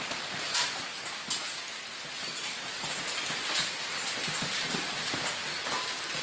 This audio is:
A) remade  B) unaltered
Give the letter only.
B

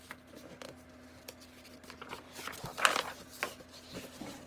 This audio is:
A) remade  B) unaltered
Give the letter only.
B